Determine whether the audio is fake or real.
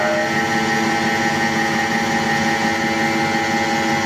real